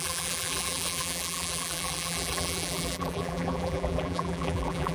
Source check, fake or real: fake